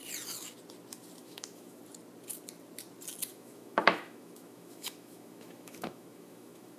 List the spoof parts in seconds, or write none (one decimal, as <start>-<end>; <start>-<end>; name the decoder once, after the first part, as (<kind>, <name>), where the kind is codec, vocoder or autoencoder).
1.2-1.8 (autoencoder, DAC-VAE); 3.3-6.8